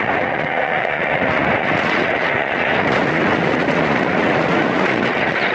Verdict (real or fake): fake